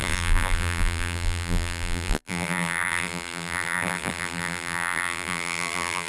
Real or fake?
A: fake